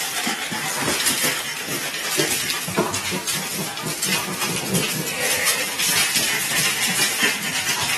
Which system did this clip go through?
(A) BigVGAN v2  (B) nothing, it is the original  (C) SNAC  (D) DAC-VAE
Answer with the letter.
B